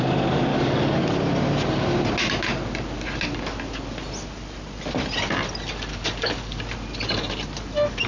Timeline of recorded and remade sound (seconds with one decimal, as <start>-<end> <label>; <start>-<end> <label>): 0.0-0.5 recorded; 0.5-1.0 remade; 1.0-5.9 recorded; 5.9-6.6 remade; 6.6-8.1 recorded